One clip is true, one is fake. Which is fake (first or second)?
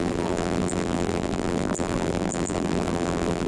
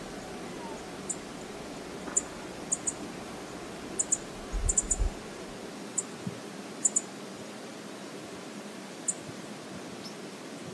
first